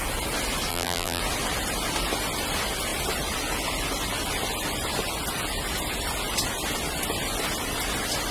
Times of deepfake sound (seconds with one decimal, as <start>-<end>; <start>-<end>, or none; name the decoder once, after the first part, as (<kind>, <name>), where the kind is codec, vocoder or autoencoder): 0.7-1.2 (vocoder, BigVGAN v2)